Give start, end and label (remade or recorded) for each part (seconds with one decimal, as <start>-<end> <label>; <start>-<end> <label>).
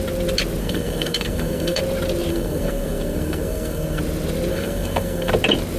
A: 0.0-0.6 recorded; 0.6-1.8 remade; 1.8-2.3 recorded; 2.3-4.0 remade; 4.0-4.5 recorded; 4.5-5.3 remade; 5.3-5.8 recorded